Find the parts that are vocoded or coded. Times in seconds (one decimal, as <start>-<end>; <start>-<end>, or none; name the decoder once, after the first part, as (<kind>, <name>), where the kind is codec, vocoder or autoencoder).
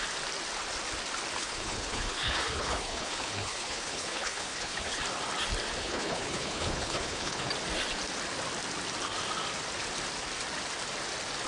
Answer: 1.4-5.0 (codec, HILCodec); 5.8-7.5